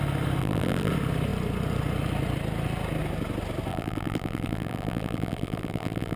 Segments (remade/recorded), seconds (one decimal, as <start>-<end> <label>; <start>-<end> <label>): 0.0-0.4 recorded; 0.4-0.9 remade; 0.9-3.7 recorded; 3.7-6.2 remade